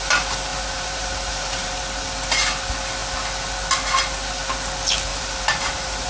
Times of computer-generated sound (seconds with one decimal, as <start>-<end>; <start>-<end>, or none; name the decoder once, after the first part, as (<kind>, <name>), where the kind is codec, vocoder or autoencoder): 0.5-1.7 (vocoder, BigVGAN v2); 5.1-6.1